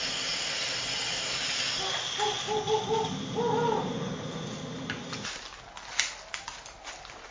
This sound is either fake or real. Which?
real